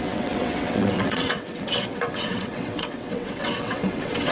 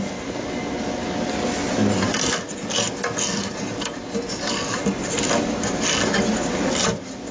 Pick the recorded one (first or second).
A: second